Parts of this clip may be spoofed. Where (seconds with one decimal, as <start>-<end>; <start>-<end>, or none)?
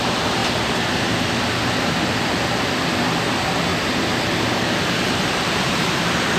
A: 0.0-0.4; 3.3-3.7; 4.8-6.4